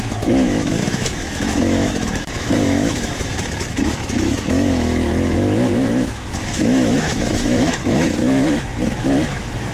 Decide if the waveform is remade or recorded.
remade